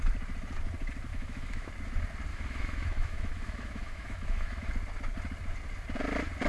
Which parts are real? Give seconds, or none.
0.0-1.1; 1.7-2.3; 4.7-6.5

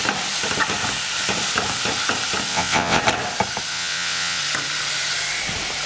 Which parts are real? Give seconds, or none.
0.0-2.5; 3.0-3.7; 4.4-5.9

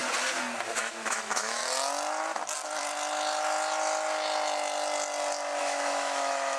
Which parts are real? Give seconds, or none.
0.0-0.9; 1.6-5.6